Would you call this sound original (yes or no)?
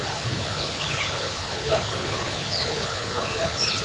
no